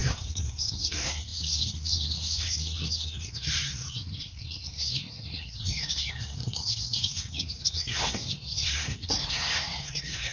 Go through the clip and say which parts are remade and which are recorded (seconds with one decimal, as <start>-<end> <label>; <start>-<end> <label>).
0.0-10.3 remade